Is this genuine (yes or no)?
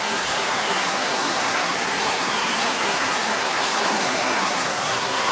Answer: no